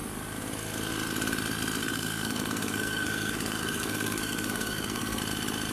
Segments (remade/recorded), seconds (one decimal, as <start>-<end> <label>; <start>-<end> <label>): 0.0-1.8 recorded; 1.8-5.2 remade; 5.2-5.7 recorded